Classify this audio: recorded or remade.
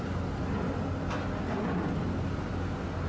recorded